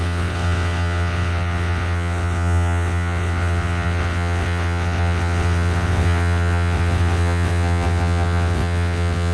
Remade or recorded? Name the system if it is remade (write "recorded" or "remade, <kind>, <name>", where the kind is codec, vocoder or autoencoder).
remade, vocoder, WaveNeXt